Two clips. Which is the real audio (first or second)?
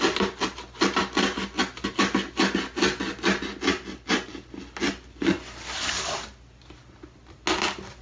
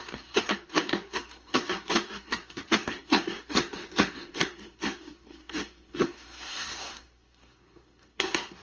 first